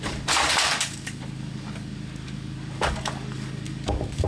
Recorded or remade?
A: remade